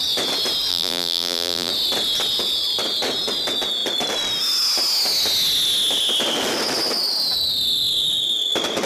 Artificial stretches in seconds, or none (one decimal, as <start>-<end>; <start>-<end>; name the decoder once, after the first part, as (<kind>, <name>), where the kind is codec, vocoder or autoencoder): 0.7-1.7 (vocoder, BigVGAN v2)